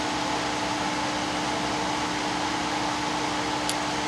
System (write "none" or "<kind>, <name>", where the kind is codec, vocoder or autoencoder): none